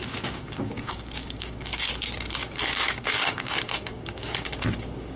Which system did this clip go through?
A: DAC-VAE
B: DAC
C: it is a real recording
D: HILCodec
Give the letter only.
B